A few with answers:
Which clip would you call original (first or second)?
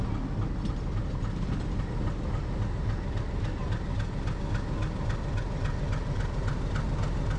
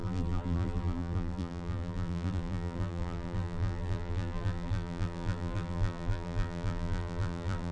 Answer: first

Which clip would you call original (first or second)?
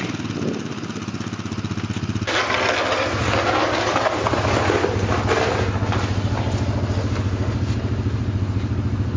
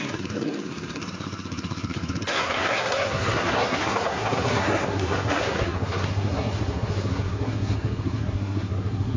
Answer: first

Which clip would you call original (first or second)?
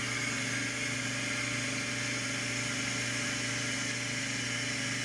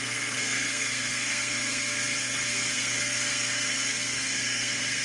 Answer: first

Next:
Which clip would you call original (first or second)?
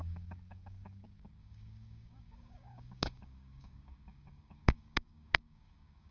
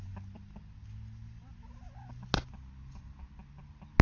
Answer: second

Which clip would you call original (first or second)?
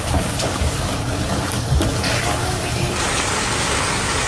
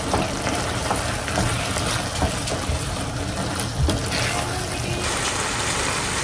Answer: second